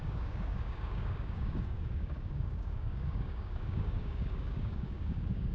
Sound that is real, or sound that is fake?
fake